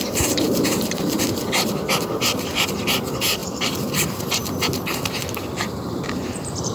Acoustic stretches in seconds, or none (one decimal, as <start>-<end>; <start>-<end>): 4.4-5.9